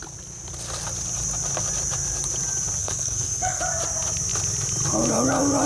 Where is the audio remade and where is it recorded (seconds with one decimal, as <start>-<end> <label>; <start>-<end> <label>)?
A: 0.0-2.8 recorded; 2.8-3.6 remade; 3.6-5.7 recorded